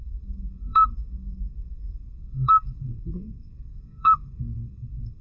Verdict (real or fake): fake